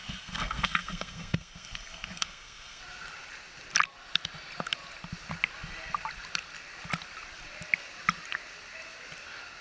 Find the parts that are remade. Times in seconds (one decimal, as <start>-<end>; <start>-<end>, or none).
0.0-2.8